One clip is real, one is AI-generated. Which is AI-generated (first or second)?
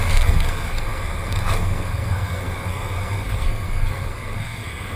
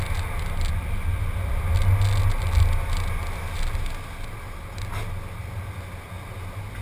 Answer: first